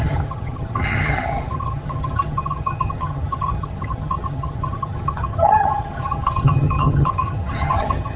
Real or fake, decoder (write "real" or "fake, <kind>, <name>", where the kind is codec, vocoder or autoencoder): fake, vocoder, HiFi-GAN